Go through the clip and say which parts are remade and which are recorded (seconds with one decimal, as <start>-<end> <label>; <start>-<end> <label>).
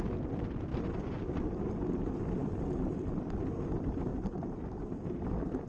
0.0-2.4 recorded; 2.4-3.4 remade; 3.4-4.1 recorded; 4.1-4.6 remade; 4.6-5.7 recorded